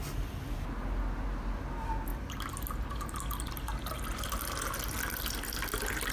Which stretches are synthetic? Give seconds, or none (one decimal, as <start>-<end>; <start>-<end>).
none